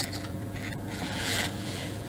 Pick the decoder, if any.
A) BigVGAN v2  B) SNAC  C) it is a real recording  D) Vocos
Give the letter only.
A